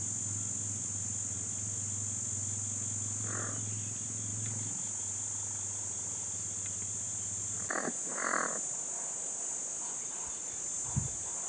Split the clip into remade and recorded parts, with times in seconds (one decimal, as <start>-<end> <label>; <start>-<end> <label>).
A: 0.0-10.0 recorded; 10.0-10.5 remade; 10.5-11.5 recorded